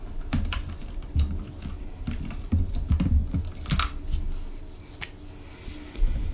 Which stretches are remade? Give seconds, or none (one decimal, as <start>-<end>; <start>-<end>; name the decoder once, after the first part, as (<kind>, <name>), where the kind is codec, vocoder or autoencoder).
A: none